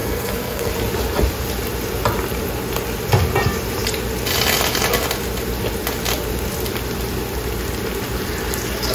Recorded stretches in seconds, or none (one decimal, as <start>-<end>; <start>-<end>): 0.7-8.9